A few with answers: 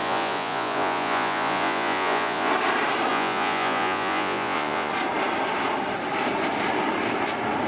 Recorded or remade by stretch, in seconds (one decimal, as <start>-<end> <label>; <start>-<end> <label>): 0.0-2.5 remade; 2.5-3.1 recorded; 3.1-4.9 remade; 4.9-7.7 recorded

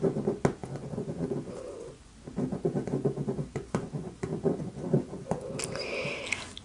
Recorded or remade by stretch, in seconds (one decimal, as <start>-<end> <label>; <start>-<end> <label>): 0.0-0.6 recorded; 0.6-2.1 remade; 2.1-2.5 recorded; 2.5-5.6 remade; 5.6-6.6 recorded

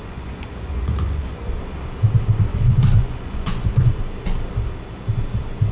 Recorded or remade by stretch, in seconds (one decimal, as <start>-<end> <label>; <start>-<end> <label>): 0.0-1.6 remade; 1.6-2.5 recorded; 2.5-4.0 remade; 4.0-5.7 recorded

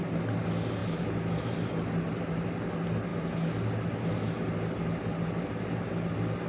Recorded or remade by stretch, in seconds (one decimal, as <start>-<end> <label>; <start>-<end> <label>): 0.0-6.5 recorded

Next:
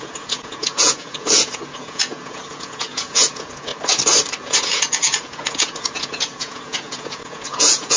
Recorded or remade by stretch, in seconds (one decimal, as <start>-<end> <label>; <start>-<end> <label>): 0.0-3.7 remade; 3.7-4.4 recorded; 4.4-8.0 remade